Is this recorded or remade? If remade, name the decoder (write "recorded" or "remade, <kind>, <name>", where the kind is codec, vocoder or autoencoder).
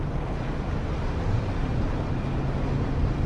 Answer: recorded